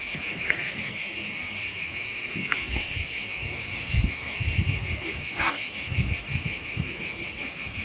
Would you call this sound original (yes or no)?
no